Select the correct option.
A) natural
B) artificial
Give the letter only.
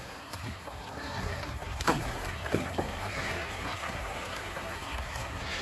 B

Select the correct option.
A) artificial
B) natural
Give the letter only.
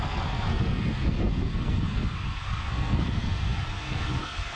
A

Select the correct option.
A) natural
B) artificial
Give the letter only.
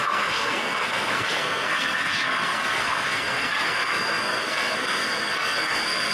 B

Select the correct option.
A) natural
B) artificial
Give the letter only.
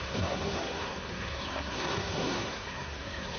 B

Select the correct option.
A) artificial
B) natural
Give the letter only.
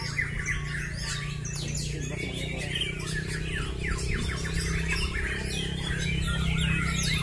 B